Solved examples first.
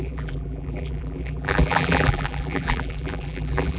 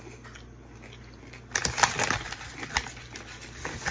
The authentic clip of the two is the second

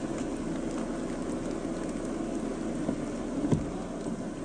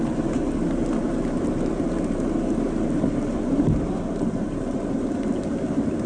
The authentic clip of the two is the first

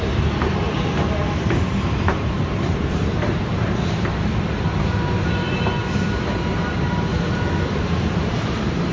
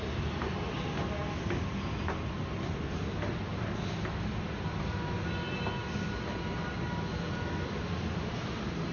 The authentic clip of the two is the second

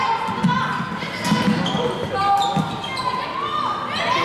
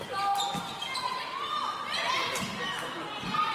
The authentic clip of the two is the first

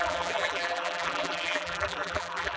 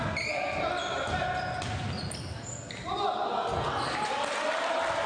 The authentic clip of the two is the second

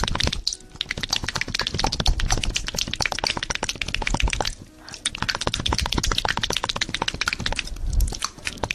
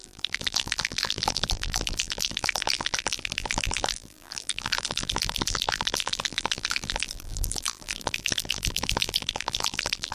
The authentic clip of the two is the first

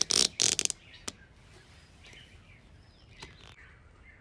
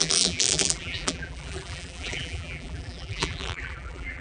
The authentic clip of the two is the first